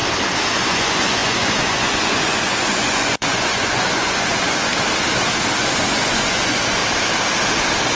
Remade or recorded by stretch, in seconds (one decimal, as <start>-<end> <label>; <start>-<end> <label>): 0.0-0.5 recorded; 0.5-4.7 remade; 4.7-5.6 recorded; 5.6-6.8 remade; 6.8-8.0 recorded